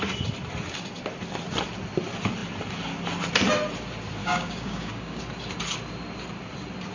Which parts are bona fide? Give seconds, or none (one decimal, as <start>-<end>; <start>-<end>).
0.0-4.2; 5.2-6.9

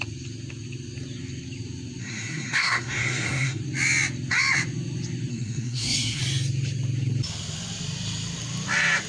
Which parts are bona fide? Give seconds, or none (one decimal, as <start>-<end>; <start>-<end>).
0.0-2.0; 3.6-5.3; 6.2-9.1

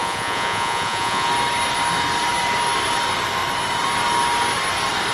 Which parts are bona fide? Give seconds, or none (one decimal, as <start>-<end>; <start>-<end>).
1.3-5.1

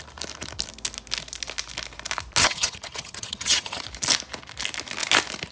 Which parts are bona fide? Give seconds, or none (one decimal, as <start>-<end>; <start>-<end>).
0.0-2.4; 3.8-5.5